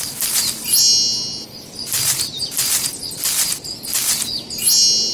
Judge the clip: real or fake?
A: real